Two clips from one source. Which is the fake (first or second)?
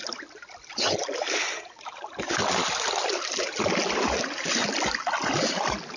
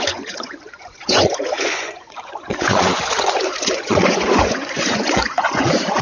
second